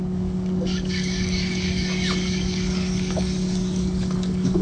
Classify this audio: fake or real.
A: fake